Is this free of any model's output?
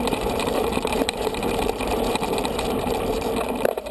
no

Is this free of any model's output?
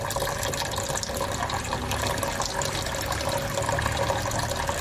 yes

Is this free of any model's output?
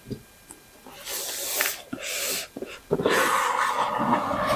yes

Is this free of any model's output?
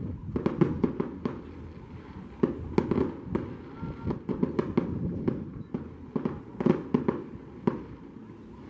yes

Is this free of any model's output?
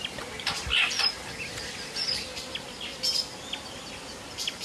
yes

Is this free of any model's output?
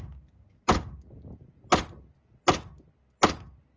yes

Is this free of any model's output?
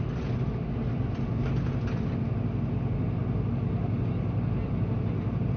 yes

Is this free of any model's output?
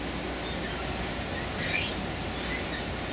yes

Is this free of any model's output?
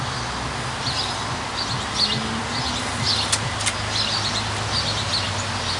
yes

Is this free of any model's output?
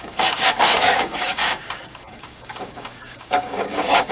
no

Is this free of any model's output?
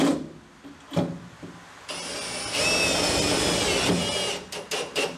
yes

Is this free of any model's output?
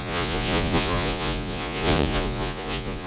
no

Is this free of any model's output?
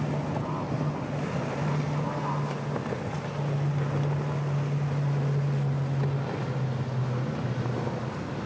yes